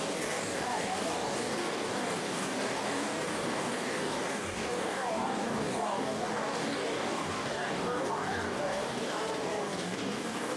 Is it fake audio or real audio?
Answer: fake